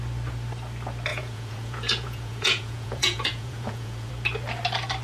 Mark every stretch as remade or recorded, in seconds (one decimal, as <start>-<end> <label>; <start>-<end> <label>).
0.0-1.1 recorded; 1.1-4.1 remade; 4.1-5.0 recorded